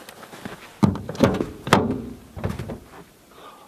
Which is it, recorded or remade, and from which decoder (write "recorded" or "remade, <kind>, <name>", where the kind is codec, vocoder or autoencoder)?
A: recorded